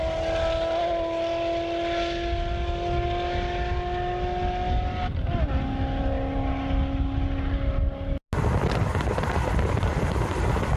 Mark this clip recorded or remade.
recorded